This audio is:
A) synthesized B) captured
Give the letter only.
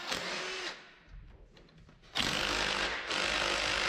B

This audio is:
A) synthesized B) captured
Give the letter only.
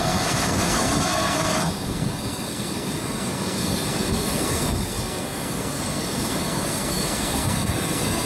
A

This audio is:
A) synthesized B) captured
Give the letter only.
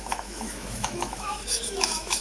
A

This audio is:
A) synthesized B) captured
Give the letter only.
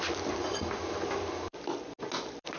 B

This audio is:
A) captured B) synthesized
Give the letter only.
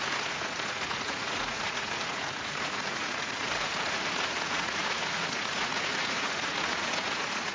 B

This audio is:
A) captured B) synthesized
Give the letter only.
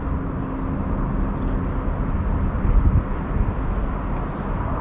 A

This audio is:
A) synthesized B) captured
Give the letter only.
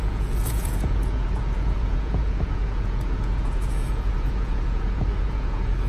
A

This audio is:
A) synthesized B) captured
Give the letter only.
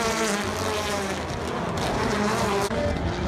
B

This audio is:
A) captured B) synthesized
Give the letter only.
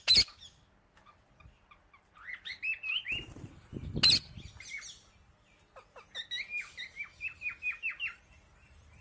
A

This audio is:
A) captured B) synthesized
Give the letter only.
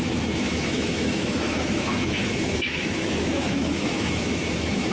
B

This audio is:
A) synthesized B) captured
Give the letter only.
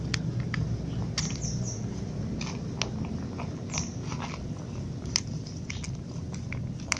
B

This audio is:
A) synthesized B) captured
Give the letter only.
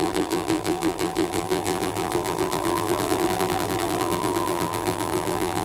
A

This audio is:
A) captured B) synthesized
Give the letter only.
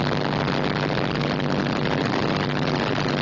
A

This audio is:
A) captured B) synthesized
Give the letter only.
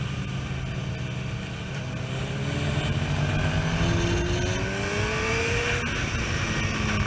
A